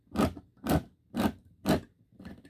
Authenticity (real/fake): real